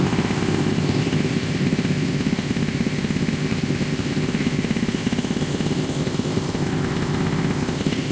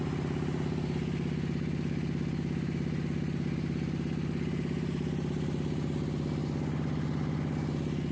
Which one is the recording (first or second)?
second